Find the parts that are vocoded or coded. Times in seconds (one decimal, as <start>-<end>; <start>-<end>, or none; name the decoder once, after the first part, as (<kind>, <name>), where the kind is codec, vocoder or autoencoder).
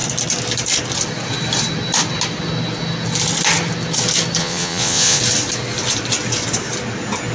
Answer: 4.4-5.2 (vocoder, Vocos)